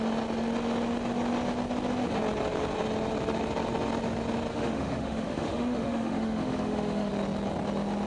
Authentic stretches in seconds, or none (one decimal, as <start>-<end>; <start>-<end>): 0.0-4.5; 7.1-8.1